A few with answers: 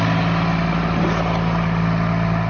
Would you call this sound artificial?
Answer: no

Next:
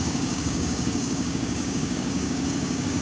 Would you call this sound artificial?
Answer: yes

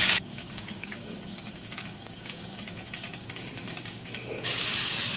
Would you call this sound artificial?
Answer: yes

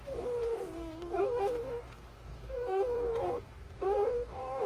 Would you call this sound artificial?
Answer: yes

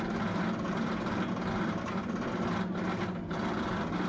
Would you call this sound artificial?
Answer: no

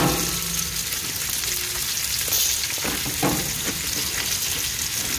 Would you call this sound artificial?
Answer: no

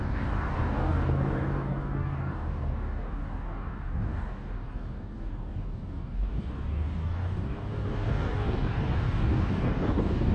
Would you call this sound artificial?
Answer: yes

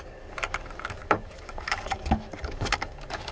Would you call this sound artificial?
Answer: yes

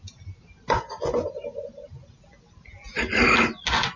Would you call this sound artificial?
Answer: no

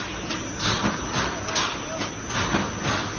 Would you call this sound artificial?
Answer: no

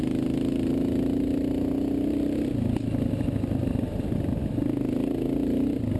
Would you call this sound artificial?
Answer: no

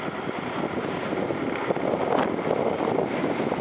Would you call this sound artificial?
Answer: no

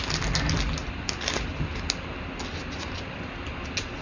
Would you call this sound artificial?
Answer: no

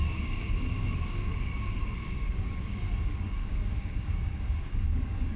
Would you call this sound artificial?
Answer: yes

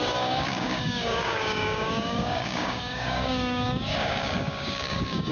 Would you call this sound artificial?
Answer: yes